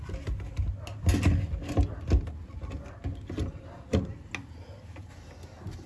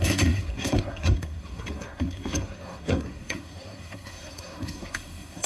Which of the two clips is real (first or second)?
first